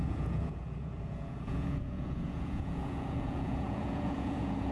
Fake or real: fake